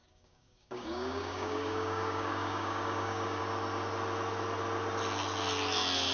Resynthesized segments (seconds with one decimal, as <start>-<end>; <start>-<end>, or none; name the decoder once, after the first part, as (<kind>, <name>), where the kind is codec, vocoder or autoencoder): 0.0-3.4 (codec, DAC)